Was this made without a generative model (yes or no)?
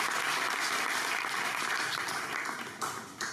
yes